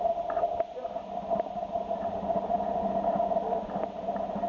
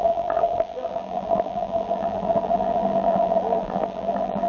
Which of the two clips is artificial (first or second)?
second